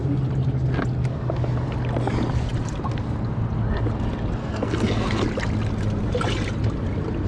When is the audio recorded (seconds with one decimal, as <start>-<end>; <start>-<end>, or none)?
0.0-4.4; 5.2-7.3